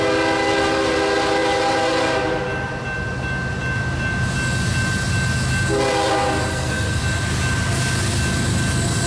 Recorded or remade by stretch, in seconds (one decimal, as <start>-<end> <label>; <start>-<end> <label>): 0.0-6.5 recorded; 6.5-7.0 remade; 7.0-9.1 recorded